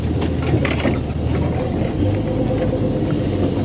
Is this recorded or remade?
recorded